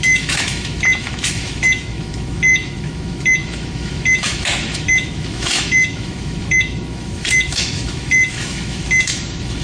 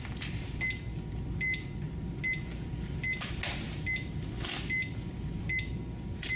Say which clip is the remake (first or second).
first